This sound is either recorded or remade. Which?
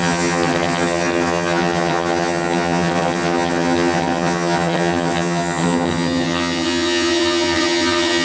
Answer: remade